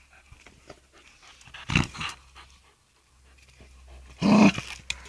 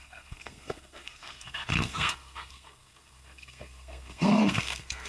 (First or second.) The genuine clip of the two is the first